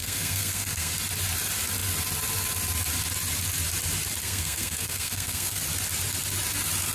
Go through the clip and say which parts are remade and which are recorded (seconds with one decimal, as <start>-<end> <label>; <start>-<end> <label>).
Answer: 0.0-0.9 remade; 0.9-4.2 recorded; 4.2-5.6 remade; 5.6-6.9 recorded